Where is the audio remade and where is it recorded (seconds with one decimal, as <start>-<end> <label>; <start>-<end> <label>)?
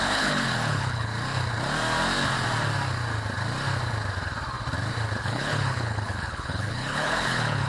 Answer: 0.0-1.1 remade; 1.1-5.2 recorded; 5.2-7.7 remade